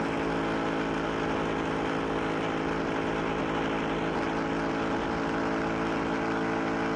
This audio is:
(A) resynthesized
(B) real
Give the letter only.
B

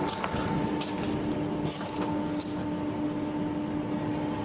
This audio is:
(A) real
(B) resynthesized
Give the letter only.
A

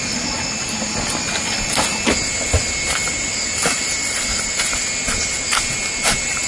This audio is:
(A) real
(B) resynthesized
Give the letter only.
A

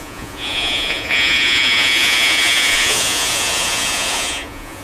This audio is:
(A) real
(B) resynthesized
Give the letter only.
B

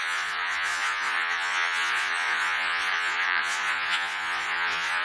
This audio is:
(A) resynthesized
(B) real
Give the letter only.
A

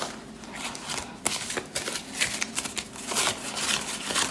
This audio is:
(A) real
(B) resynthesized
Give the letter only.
A